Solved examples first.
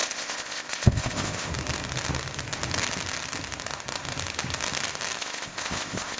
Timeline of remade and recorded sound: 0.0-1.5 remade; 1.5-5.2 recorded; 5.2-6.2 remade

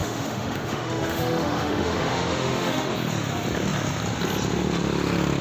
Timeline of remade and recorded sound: 0.0-2.9 remade; 2.9-5.4 recorded